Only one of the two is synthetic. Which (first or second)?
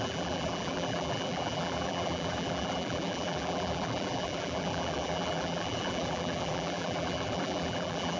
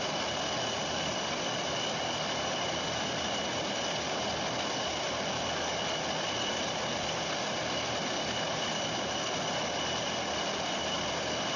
first